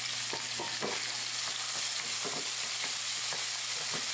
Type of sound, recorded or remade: recorded